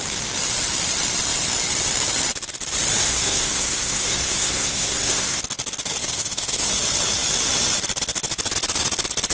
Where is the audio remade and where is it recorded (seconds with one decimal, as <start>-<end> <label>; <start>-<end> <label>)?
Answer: 0.0-3.0 recorded; 3.0-5.4 remade; 5.4-6.0 recorded; 6.0-6.7 remade; 6.7-9.3 recorded